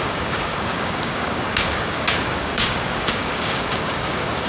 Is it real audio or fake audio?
fake